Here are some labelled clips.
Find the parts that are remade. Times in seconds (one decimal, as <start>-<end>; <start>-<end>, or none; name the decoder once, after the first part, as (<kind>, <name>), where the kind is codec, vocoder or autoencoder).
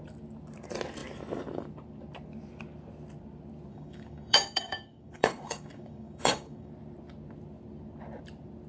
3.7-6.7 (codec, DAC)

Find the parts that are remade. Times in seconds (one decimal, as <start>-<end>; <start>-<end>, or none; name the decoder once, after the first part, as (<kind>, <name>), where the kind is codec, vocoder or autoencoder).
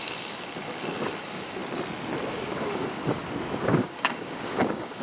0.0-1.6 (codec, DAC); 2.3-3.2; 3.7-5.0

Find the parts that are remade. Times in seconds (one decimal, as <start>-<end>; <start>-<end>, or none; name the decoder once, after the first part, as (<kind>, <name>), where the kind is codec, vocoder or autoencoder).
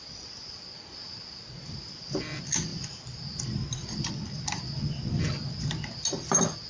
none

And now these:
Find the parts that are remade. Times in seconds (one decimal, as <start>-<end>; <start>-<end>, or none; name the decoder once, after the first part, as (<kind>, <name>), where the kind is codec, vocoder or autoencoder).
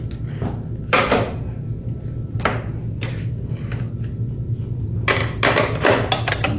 none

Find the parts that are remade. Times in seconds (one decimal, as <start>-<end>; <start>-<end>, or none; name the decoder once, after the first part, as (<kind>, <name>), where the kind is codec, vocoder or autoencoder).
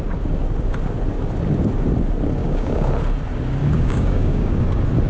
2.4-2.9 (codec, DAC); 3.6-4.6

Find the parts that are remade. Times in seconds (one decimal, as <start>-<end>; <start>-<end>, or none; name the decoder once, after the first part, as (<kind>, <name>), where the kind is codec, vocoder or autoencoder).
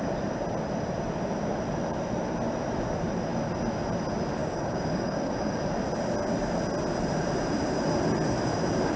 4.4-5.6 (codec, DAC)